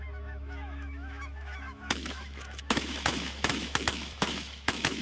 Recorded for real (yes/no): no